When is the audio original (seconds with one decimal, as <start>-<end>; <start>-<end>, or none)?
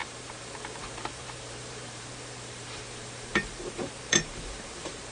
none